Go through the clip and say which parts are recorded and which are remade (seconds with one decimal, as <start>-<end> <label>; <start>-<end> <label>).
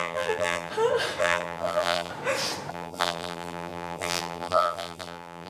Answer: 0.0-0.7 remade; 0.7-1.2 recorded; 1.2-2.1 remade; 2.1-2.7 recorded; 2.7-5.5 remade